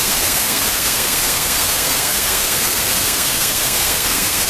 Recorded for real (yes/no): no